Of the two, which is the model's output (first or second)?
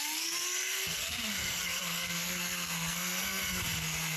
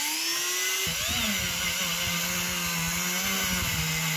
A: first